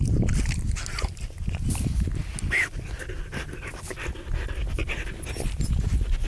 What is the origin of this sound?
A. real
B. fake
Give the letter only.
A